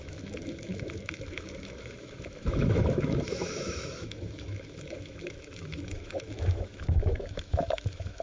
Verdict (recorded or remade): remade